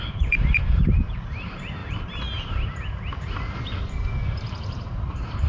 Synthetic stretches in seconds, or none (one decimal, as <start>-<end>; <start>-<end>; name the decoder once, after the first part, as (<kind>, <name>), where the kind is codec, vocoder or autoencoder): 0.0-1.8 (vocoder, BigVGAN v2); 3.9-5.5